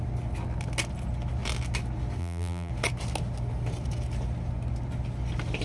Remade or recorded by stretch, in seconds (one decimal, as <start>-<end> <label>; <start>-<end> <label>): 0.0-2.2 recorded; 2.2-2.7 remade; 2.7-5.6 recorded